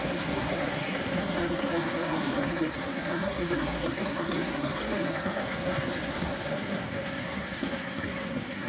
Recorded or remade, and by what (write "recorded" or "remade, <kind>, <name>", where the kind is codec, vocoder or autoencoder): remade, codec, SNAC